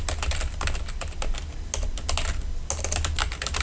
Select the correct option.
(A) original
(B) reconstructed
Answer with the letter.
A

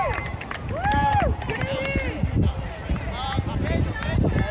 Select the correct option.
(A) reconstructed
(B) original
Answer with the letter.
B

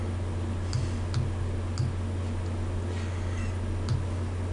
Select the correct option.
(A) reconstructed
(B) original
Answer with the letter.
B